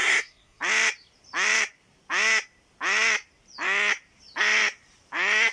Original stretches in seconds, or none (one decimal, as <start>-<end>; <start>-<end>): 0.6-5.5